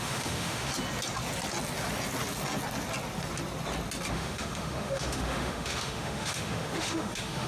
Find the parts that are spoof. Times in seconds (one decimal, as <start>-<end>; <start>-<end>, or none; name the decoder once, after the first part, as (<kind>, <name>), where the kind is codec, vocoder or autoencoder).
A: 0.0-0.7 (autoencoder, DAC-VAE); 4.1-7.5

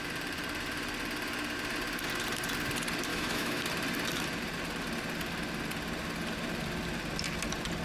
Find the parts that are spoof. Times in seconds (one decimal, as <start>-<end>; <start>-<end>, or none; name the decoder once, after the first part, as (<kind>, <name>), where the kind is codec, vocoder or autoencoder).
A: 3.1-3.6 (autoencoder, DAC-VAE)